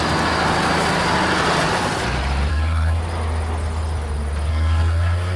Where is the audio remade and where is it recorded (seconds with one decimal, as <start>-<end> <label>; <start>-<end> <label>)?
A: 0.0-2.5 recorded; 2.5-3.0 remade; 3.0-4.5 recorded; 4.5-5.4 remade